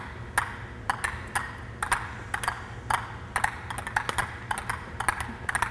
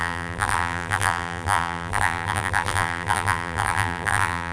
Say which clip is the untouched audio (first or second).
first